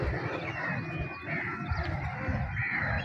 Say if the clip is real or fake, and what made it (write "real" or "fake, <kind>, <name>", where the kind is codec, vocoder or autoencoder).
real